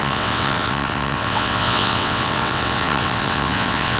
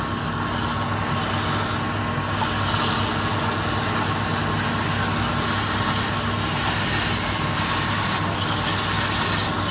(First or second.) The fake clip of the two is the first